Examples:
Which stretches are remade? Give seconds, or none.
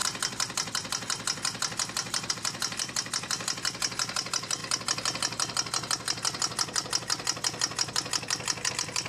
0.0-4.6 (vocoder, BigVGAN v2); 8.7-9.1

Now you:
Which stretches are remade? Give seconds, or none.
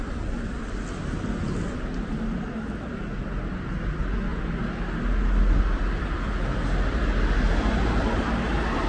none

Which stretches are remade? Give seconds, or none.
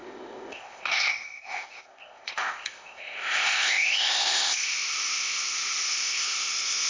0.0-6.9 (codec, ZipCodec)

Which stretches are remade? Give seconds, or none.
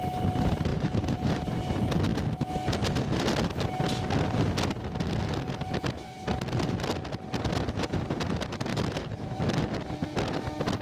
0.7-1.7 (vocoder, BigVGAN v2); 8.7-9.4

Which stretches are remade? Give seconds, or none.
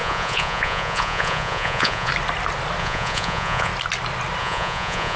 0.0-2.1 (vocoder, Vocos); 2.8-3.7; 4.4-5.2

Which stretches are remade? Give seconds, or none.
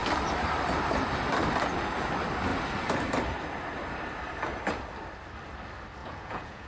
6.0-6.7 (vocoder, Vocos)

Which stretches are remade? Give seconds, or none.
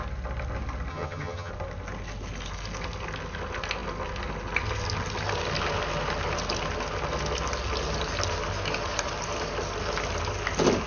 0.9-1.5 (vocoder, HiFi-GAN)